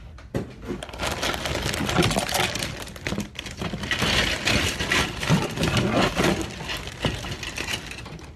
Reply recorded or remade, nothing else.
recorded